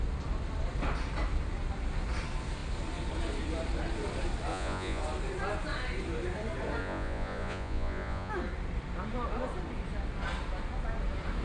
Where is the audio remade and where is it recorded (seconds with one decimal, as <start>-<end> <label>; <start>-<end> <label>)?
0.0-4.5 recorded; 4.5-5.0 remade; 5.0-6.8 recorded; 6.8-8.3 remade; 8.3-11.4 recorded